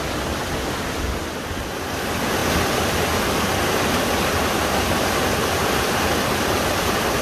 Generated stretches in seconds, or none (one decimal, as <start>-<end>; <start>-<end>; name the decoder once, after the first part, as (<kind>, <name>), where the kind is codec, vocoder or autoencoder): 5.4-6.0 (vocoder, BigVGAN v2)